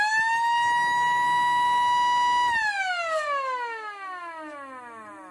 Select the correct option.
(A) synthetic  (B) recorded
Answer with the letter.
B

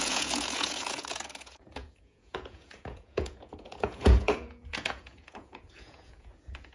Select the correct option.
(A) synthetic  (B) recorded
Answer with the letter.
A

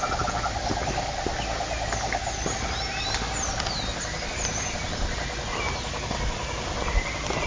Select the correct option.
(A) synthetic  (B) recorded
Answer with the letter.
B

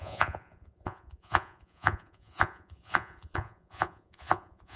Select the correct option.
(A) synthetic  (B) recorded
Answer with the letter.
A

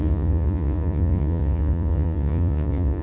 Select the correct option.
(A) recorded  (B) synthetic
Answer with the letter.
B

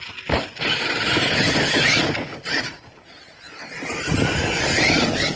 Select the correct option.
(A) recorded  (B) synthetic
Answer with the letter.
A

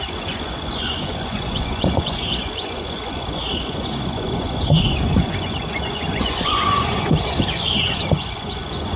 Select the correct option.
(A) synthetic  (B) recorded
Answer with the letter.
A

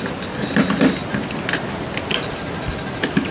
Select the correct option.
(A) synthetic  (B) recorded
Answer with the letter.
B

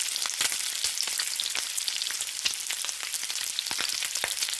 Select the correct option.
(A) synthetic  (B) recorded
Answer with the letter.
B